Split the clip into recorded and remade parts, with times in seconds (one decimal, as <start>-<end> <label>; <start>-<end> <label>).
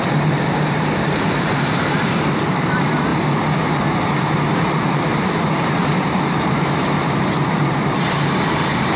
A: 0.0-3.1 remade; 3.1-4.0 recorded; 4.0-9.0 remade